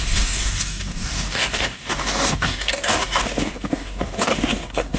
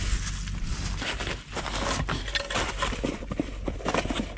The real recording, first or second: second